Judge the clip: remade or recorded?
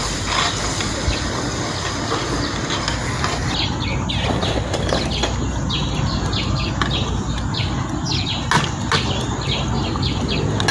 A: recorded